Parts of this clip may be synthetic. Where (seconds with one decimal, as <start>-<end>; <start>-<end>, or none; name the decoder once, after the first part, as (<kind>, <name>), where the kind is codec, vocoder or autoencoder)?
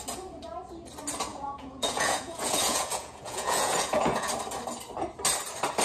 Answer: 1.3-4.3 (vocoder, Vocos)